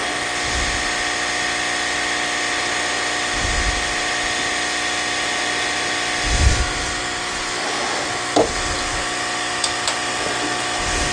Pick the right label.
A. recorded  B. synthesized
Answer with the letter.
A